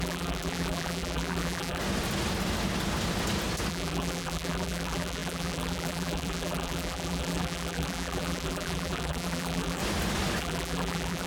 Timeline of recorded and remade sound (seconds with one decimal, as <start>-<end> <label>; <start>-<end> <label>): 0.0-1.8 remade; 1.8-3.7 recorded; 3.7-9.8 remade; 9.8-10.4 recorded; 10.4-11.3 remade